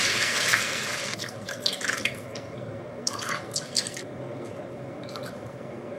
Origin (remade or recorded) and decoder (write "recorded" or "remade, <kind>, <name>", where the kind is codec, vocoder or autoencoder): remade, codec, SNAC